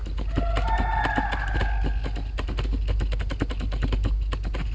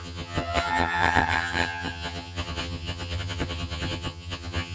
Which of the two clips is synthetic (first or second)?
second